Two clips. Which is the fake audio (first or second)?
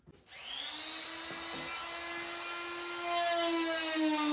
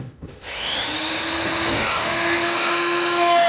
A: second